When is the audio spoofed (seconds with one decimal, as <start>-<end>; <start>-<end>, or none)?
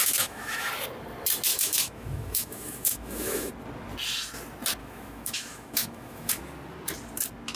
0.0-0.7; 1.5-3.5; 4.8-6.4